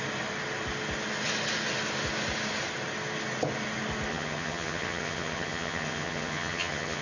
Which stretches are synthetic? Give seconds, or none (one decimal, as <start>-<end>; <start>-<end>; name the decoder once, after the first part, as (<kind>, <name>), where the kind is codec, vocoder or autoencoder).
4.1-7.0 (vocoder, HiFi-GAN)